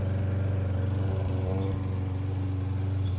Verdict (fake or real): real